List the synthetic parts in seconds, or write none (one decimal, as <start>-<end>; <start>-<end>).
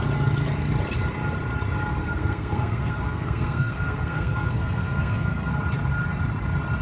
2.0-5.5